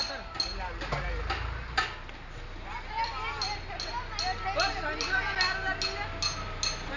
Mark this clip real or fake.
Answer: real